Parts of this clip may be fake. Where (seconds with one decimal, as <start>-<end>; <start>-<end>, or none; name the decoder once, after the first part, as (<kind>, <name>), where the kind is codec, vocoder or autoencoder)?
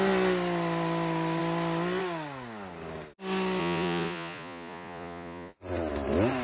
3.6-5.6 (vocoder, Vocos)